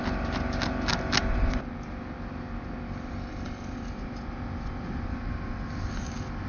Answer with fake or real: real